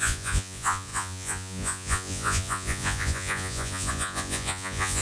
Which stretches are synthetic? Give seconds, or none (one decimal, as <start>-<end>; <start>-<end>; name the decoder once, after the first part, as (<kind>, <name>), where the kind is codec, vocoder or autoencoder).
0.0-5.0 (vocoder, Vocos)